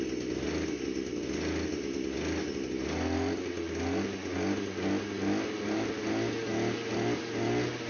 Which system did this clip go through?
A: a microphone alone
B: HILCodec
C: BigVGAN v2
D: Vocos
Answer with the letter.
A